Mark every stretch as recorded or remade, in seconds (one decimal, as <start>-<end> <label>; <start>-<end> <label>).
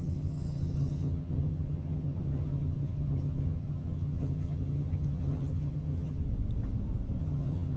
0.0-6.2 remade; 6.2-7.2 recorded; 7.2-7.8 remade